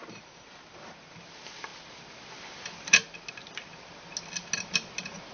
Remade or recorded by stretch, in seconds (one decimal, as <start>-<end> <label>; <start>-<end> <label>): 0.0-5.3 recorded